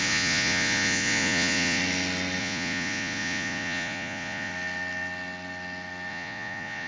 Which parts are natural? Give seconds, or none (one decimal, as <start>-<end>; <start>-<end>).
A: 1.8-2.4; 4.5-6.1